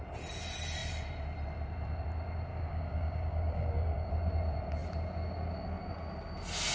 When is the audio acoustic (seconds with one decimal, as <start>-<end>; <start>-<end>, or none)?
0.0-2.5; 4.1-6.7